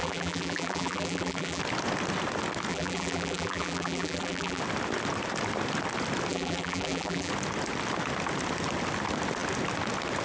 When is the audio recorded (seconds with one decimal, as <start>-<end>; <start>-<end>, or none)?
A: 1.6-2.7; 4.6-6.3; 7.3-10.2